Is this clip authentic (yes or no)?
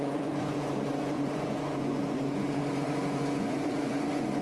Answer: no